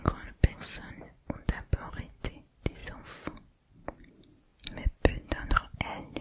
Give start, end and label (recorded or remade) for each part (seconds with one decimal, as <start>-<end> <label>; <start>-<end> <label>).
0.0-6.2 recorded